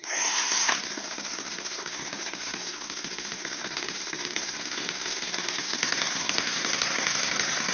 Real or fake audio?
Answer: fake